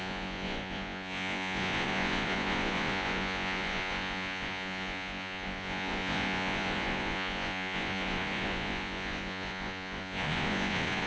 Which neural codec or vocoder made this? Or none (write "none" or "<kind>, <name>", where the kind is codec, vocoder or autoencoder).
vocoder, Vocos